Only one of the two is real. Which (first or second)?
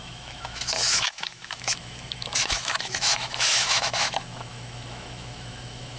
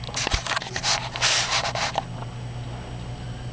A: second